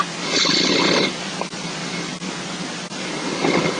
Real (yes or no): yes